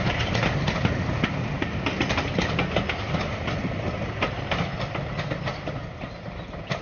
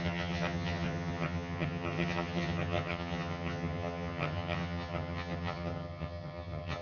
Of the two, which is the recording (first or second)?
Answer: first